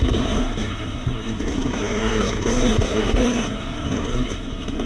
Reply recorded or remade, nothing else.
remade